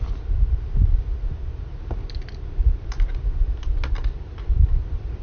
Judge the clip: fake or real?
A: real